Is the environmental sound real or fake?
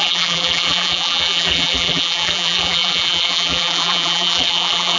fake